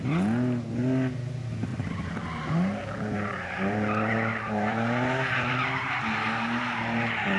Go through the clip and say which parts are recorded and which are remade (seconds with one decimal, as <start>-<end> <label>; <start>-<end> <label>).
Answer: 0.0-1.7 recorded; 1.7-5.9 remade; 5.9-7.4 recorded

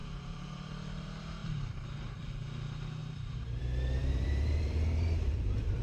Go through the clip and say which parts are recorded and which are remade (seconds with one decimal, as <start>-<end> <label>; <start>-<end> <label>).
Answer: 0.0-0.7 remade; 0.7-1.4 recorded; 1.4-2.2 remade; 2.2-3.0 recorded; 3.0-3.6 remade; 3.6-4.0 recorded; 4.0-5.8 remade

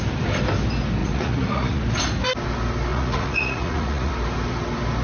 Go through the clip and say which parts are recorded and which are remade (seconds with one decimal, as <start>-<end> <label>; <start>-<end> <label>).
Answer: 0.0-1.0 recorded; 1.0-1.8 remade; 1.8-2.9 recorded; 2.9-4.1 remade; 4.1-5.0 recorded